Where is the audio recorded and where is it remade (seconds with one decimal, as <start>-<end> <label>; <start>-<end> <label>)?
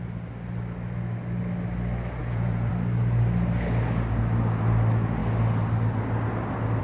0.0-2.2 recorded; 2.2-2.7 remade; 2.7-6.8 recorded